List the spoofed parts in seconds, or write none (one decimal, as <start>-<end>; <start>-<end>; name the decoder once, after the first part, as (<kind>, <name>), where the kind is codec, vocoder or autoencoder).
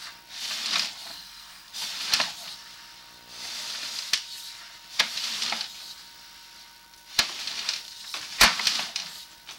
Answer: 1.1-1.7 (codec, SNAC)